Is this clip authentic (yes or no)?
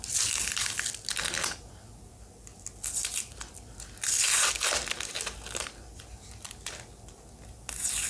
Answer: yes